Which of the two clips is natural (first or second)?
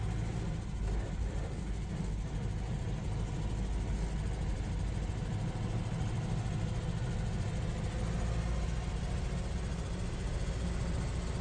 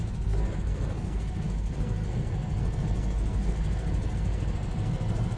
first